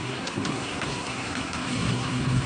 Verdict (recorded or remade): remade